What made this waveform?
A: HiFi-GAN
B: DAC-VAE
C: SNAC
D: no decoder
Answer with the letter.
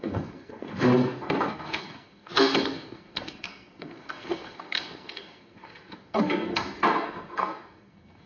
C